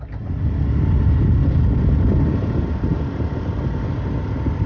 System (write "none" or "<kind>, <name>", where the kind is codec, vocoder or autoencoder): none